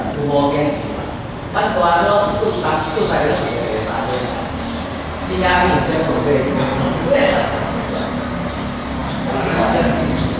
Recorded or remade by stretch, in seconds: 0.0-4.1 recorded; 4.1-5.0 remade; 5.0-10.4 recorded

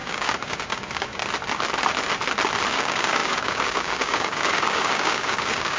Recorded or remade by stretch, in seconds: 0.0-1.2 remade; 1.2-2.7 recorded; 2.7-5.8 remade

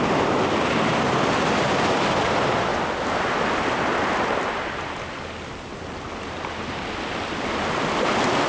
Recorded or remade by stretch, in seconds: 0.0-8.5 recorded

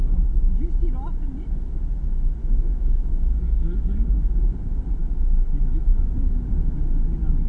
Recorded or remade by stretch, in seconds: 0.0-2.4 recorded; 2.4-4.4 remade; 4.4-7.5 recorded

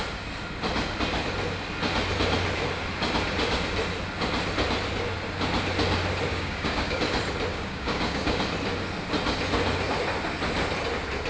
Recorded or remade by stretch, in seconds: 0.0-6.3 recorded; 6.3-7.0 remade; 7.0-7.5 recorded; 7.5-8.4 remade; 8.4-11.3 recorded

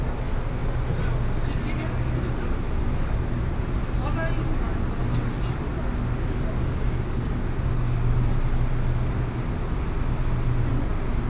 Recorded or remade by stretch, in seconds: 0.0-6.6 recorded; 6.6-8.0 remade; 8.0-11.3 recorded

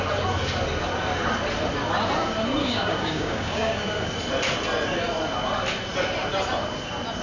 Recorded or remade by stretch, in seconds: 0.0-2.6 recorded; 2.6-4.1 remade; 4.1-7.2 recorded